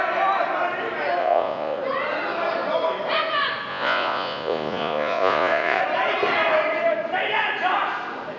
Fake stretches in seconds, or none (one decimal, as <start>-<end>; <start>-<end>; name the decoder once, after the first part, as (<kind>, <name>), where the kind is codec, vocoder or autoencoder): 1.2-1.8 (vocoder, Vocos); 3.7-5.8